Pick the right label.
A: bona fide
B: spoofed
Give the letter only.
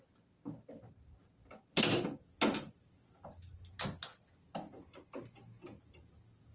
A